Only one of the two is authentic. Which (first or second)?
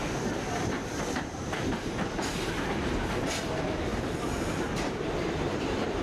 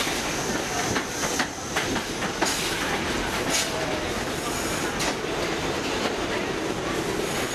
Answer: second